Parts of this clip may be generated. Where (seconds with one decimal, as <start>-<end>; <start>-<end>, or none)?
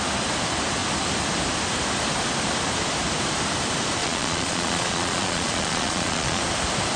4.0-6.4